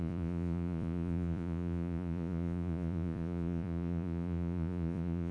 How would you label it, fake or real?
fake